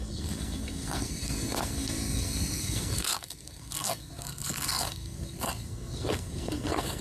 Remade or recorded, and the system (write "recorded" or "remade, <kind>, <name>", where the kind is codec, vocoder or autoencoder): remade, codec, SNAC